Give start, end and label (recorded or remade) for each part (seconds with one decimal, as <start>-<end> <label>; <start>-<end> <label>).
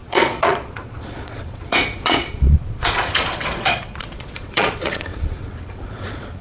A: 0.0-6.4 remade